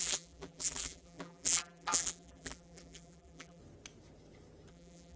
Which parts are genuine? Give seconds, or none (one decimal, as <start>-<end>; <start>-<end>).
3.6-4.7